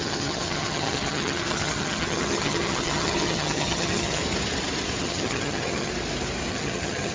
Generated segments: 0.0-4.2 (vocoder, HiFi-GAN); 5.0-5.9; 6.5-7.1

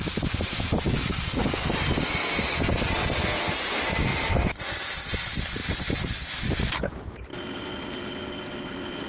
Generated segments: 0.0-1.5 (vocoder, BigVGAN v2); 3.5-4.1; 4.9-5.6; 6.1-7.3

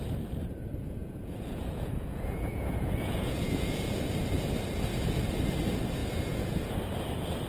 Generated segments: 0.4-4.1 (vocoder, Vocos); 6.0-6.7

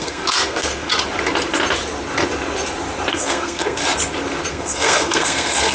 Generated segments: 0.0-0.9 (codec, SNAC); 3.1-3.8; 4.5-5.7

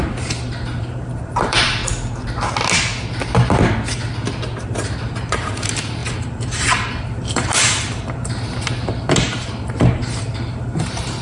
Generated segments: 0.0-1.8 (vocoder, BigVGAN v2); 4.6-11.2